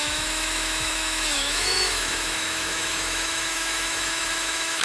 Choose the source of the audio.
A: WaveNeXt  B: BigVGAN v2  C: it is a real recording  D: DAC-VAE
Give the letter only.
D